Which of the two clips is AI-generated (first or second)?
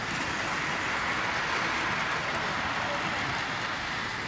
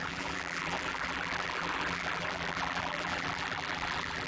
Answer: second